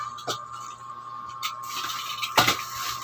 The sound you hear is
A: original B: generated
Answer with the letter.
A